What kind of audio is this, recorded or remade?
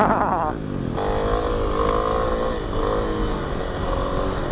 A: recorded